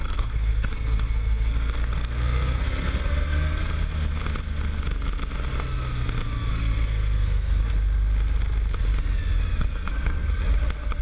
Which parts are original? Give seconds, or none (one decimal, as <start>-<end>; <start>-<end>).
3.6-6.5; 7.6-9.6; 10.3-11.0